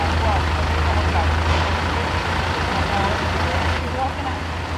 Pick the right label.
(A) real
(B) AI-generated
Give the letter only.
A